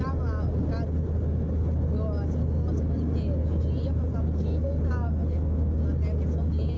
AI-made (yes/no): no